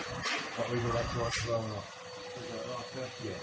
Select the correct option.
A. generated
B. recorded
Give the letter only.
B